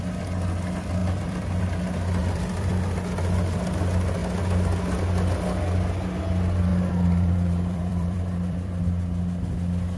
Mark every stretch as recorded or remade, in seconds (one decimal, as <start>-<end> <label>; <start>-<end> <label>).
0.0-1.0 recorded; 1.0-1.6 remade; 1.6-2.2 recorded; 2.2-2.7 remade; 2.7-6.7 recorded; 6.7-8.8 remade; 8.8-10.0 recorded